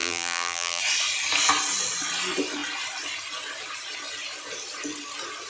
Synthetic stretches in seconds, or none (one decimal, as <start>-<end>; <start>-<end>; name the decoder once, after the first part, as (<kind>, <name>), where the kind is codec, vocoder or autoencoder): 0.0-0.8 (vocoder, BigVGAN v2)